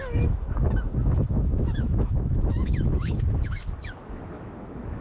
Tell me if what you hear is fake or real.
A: fake